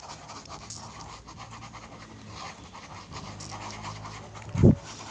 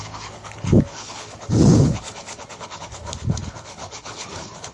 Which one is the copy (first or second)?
second